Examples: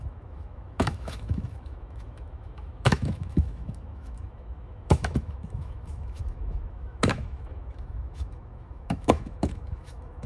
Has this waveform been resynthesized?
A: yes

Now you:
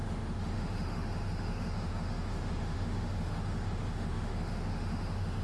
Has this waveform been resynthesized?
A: yes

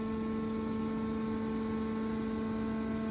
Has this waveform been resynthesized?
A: no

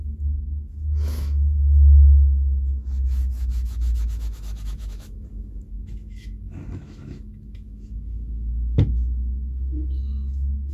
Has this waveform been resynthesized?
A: yes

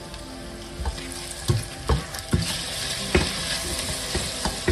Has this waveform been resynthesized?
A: no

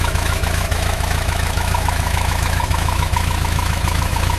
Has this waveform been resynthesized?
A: yes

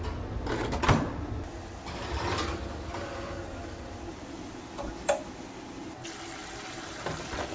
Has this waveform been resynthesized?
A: no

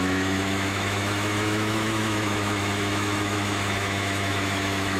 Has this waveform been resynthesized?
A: yes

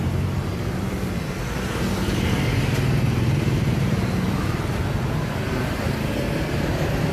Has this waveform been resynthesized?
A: no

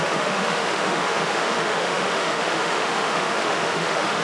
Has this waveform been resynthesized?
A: yes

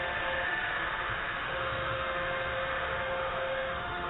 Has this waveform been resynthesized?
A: yes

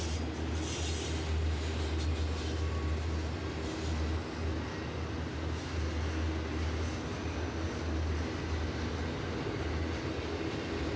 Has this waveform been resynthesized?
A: no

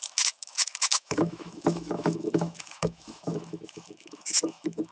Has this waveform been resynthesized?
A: yes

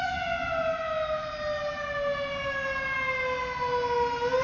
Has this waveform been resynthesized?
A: no